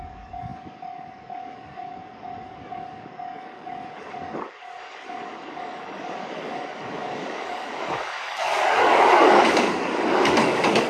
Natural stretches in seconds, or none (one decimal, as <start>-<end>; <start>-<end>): none